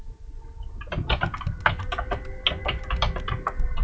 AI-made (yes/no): no